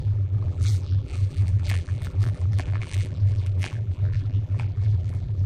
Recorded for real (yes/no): no